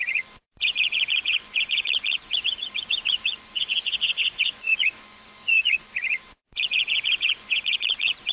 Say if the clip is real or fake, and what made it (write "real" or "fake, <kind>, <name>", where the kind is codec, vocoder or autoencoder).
fake, vocoder, Vocos